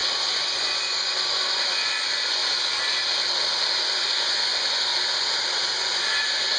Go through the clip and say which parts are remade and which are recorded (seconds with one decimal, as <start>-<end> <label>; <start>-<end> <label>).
0.0-2.4 remade; 2.4-3.8 recorded; 3.8-4.9 remade; 4.9-5.7 recorded; 5.7-6.6 remade

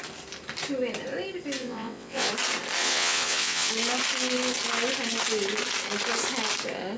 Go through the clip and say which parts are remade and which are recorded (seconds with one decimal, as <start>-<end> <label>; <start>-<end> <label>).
0.0-1.6 recorded; 1.6-2.3 remade; 2.3-2.8 recorded; 2.8-3.7 remade; 3.7-7.0 recorded